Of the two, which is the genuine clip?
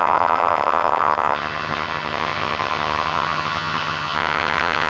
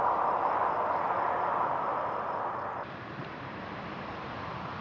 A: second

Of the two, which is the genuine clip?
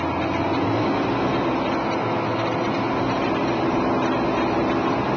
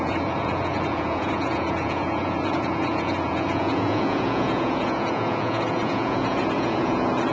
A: first